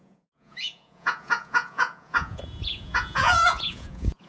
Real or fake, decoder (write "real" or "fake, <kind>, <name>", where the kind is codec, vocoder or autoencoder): fake, vocoder, Vocos